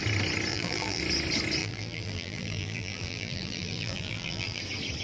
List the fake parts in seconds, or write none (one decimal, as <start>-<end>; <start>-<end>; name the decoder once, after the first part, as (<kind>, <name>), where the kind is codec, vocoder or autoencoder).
0.5-1.0 (vocoder, BigVGAN v2); 1.6-4.6